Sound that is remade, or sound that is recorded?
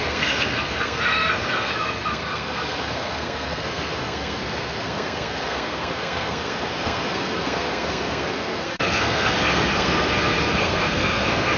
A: remade